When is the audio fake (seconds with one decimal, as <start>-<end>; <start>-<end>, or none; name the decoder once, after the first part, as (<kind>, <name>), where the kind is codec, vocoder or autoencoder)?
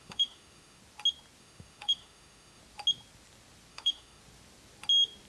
0.0-0.8 (autoencoder, DAC-VAE); 1.4-2.6; 3.7-4.2